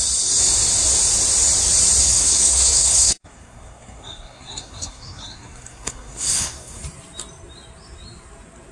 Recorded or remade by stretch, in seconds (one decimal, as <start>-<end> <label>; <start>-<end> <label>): 0.0-2.0 recorded; 2.0-6.8 remade; 6.8-8.7 recorded